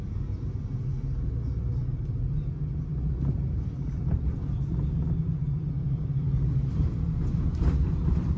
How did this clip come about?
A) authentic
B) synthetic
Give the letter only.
A